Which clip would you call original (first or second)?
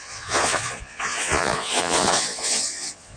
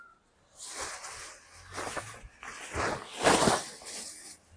second